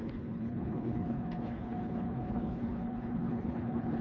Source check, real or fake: fake